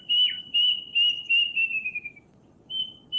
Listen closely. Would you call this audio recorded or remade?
recorded